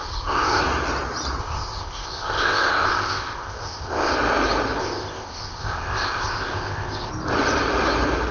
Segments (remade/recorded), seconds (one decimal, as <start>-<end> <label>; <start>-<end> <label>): 0.0-0.6 remade; 0.6-1.4 recorded; 1.4-4.1 remade; 4.1-4.8 recorded; 4.8-7.1 remade; 7.1-8.3 recorded